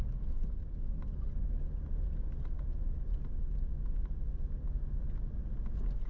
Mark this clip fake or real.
real